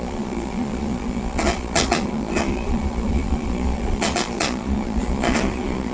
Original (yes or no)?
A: no